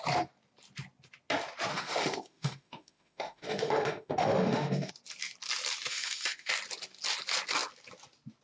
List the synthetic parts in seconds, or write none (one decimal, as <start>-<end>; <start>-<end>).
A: 1.7-4.9; 5.9-6.5

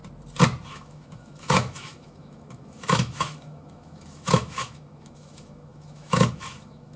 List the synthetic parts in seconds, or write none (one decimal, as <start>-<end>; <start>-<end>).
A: 0.7-7.0

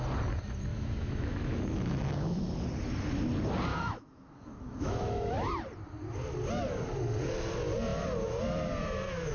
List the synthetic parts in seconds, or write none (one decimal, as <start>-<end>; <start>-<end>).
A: 0.7-2.4; 3.7-5.5

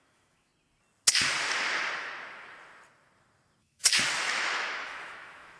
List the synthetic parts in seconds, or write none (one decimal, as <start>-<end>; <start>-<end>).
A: 0.0-0.5; 3.6-5.6

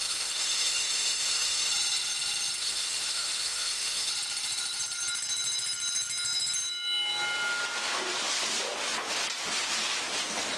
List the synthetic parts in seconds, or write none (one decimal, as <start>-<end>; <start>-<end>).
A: 0.0-1.7; 2.6-4.1

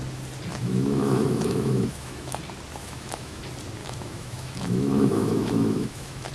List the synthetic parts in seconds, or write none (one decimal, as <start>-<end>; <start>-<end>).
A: 0.5-2.4; 2.8-3.4; 3.8-6.3

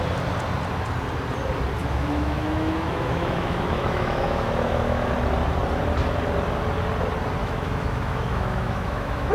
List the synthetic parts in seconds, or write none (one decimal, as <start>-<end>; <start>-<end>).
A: 1.8-5.1; 7.4-9.3

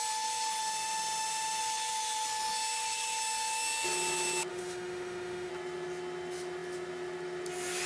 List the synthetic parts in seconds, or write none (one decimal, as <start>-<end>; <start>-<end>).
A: 0.6-1.6; 4.5-5.5